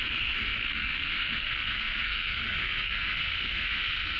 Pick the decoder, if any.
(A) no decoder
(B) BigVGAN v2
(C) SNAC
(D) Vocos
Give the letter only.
C